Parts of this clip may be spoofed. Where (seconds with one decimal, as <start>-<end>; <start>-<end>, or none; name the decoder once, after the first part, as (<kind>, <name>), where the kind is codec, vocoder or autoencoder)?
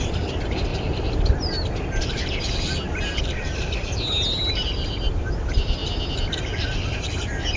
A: none